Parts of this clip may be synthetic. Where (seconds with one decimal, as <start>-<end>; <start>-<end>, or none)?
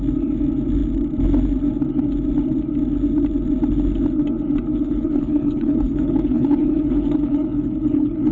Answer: 4.7-8.3